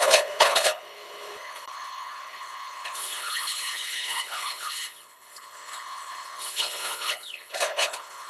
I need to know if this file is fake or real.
fake